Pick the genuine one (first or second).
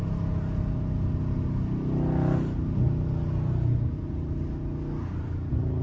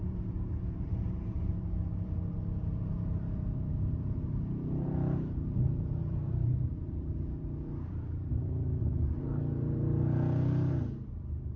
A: first